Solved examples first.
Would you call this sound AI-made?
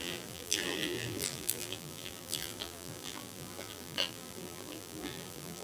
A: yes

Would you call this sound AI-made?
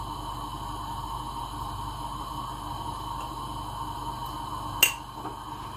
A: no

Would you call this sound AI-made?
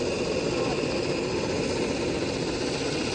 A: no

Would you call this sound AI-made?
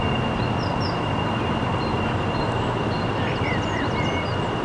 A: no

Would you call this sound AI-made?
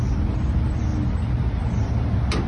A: no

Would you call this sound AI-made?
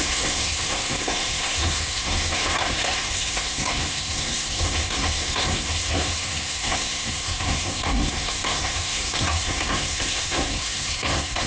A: yes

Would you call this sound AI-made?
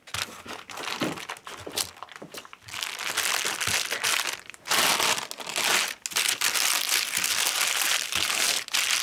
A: no